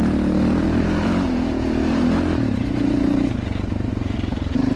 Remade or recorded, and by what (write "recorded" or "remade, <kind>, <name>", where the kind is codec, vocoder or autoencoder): remade, vocoder, BigVGAN v2